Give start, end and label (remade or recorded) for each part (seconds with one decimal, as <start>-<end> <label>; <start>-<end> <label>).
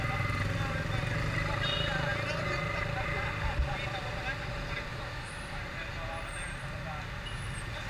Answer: 0.0-4.9 recorded; 4.9-5.6 remade; 5.6-7.9 recorded